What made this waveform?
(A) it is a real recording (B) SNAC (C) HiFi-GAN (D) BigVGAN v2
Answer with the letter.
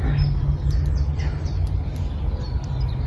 A